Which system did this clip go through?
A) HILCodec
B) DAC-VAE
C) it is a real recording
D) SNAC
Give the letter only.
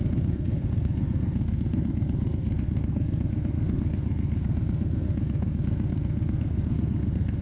D